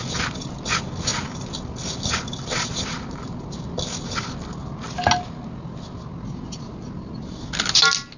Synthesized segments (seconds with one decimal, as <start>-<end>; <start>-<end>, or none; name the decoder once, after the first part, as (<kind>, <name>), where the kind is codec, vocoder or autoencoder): none